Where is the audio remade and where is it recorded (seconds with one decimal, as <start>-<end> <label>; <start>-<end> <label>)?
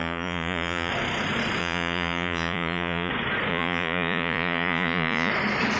0.0-0.9 remade; 0.9-1.6 recorded; 1.6-3.1 remade; 3.1-3.5 recorded; 3.5-5.3 remade; 5.3-5.8 recorded